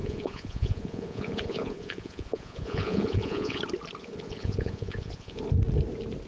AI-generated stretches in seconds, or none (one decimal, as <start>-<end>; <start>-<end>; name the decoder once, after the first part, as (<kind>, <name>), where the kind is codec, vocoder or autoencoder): 0.0-3.6 (vocoder, Vocos); 4.0-5.4